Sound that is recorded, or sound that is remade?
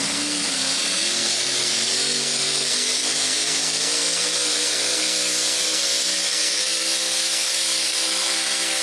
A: remade